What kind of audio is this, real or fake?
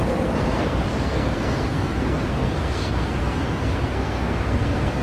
fake